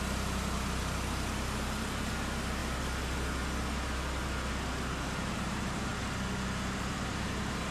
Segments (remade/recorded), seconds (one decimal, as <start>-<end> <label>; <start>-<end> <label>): 0.0-2.6 remade; 2.6-5.0 recorded; 5.0-5.9 remade; 5.9-7.1 recorded; 7.1-7.7 remade